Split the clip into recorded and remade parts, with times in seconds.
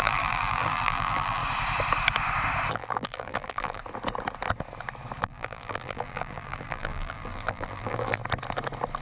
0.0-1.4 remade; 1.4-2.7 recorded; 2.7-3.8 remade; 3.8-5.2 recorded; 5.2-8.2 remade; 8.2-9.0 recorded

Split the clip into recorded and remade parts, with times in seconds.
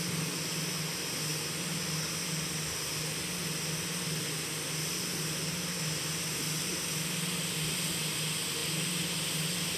0.0-9.8 recorded